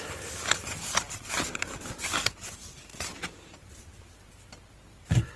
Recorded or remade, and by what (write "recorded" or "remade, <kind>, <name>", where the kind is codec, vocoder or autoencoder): recorded